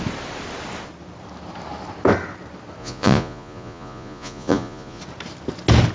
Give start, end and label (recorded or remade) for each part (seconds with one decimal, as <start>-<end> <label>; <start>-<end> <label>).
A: 0.0-2.8 recorded; 2.8-5.0 remade; 5.0-5.9 recorded